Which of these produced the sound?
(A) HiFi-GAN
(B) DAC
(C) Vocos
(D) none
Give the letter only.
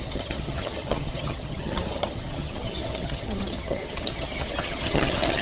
A